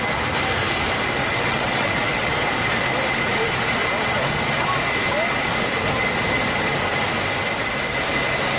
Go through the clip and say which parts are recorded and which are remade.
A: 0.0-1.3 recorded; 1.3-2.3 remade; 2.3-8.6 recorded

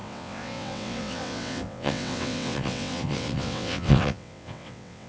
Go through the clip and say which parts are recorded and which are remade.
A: 0.0-5.1 remade

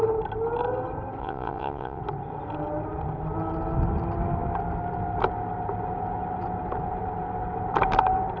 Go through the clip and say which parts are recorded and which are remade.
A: 0.0-1.2 recorded; 1.2-2.0 remade; 2.0-8.4 recorded

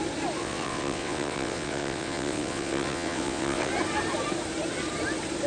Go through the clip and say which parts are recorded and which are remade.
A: 0.0-0.4 recorded; 0.4-3.7 remade; 3.7-5.5 recorded

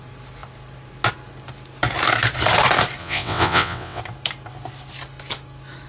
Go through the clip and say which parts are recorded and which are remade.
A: 0.0-3.0 recorded; 3.0-4.0 remade; 4.0-5.9 recorded

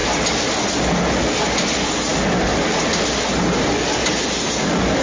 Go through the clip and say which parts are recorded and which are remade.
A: 0.0-5.0 recorded

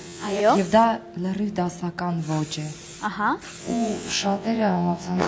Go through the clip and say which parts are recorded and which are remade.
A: 0.0-0.4 remade; 0.4-3.6 recorded; 3.6-5.3 remade

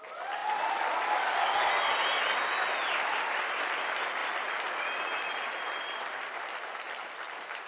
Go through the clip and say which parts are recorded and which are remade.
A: 0.0-7.7 recorded